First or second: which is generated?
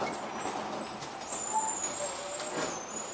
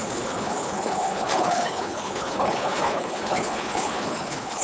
second